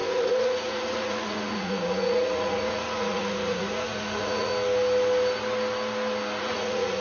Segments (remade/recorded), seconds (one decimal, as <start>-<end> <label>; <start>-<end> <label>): 0.0-4.5 remade; 4.5-6.4 recorded; 6.4-7.0 remade

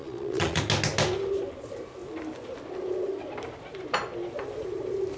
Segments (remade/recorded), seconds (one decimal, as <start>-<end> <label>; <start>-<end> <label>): 0.0-0.6 remade; 0.6-5.2 recorded

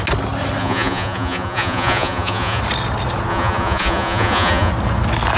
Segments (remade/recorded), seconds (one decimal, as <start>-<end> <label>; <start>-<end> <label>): 0.0-0.6 recorded; 0.6-2.6 remade; 2.6-3.3 recorded; 3.3-4.7 remade; 4.7-5.4 recorded

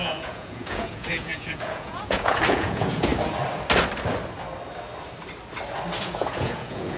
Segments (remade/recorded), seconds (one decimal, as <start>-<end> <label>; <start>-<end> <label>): 0.0-3.1 remade; 3.1-6.0 recorded; 6.0-7.0 remade

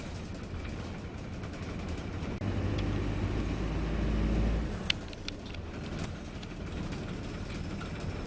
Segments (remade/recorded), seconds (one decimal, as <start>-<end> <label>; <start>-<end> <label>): 0.0-8.3 recorded